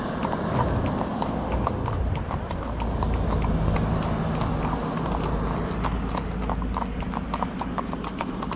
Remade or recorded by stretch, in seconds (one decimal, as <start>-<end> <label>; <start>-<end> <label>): 0.0-8.6 recorded